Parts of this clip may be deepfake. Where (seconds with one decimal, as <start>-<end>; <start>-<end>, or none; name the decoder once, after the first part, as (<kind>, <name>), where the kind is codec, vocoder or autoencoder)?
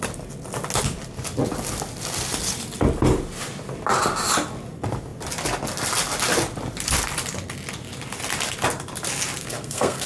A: 9.4-10.1 (codec, SNAC)